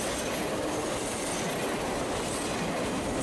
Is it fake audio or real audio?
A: real